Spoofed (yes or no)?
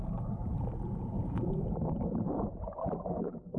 yes